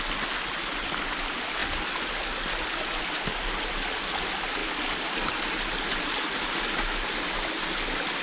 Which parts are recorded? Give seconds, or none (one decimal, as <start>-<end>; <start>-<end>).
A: 0.0-8.2